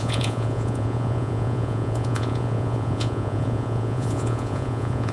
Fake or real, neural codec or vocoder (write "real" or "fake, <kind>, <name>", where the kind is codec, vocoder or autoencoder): fake, vocoder, Vocos